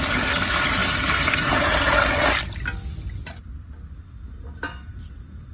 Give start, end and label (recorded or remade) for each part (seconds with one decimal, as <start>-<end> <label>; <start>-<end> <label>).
0.0-5.5 recorded